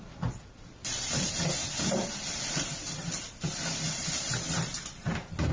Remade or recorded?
recorded